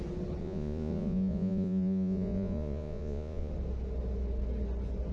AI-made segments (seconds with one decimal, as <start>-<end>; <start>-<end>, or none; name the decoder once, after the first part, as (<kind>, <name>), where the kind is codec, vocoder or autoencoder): 0.4-3.5 (vocoder, Vocos)